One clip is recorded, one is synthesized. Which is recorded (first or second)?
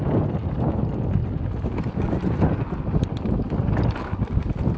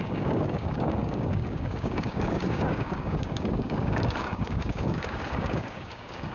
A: first